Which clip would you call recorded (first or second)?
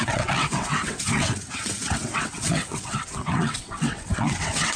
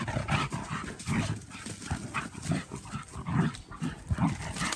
second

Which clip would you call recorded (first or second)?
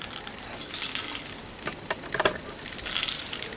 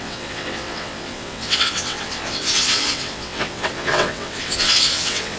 first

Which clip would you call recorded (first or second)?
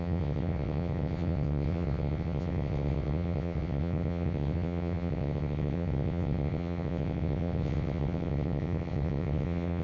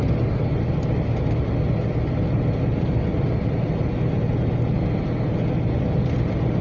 second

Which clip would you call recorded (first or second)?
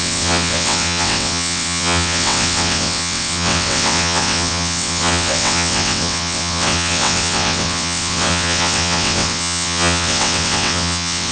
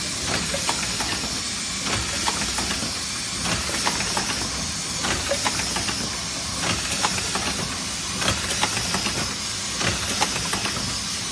second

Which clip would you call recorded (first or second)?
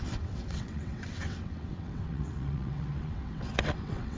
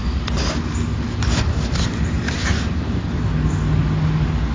second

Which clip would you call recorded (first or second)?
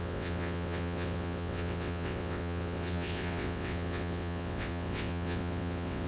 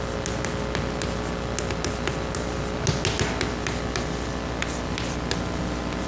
second